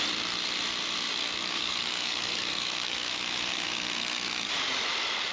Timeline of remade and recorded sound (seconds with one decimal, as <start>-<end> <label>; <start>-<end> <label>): 0.0-1.1 recorded; 1.1-3.1 remade; 3.1-3.5 recorded; 3.5-4.5 remade; 4.5-5.3 recorded